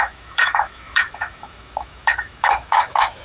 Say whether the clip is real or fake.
fake